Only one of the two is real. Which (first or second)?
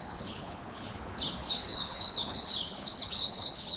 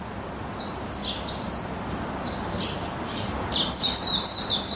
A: second